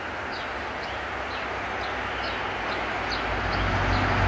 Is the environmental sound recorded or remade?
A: recorded